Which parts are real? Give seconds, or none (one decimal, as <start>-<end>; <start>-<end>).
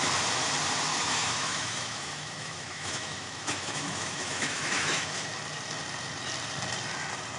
0.0-0.9; 5.3-7.4